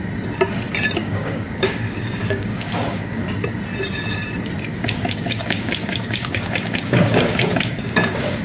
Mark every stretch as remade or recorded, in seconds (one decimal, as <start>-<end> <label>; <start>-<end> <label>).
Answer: 0.0-1.0 recorded; 1.0-3.2 remade; 3.2-4.7 recorded; 4.7-8.4 remade